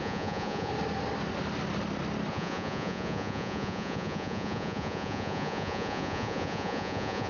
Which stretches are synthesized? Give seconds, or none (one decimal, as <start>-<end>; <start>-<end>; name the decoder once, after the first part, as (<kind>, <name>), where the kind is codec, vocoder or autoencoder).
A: 0.0-0.7 (vocoder, Vocos); 2.3-7.3